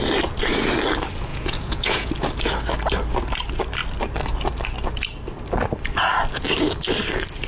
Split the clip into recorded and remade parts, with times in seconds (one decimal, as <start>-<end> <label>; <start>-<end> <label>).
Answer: 0.0-1.3 recorded; 1.3-2.1 remade; 2.1-7.5 recorded